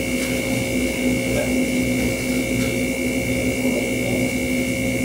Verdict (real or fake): real